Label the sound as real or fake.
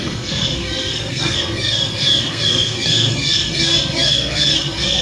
fake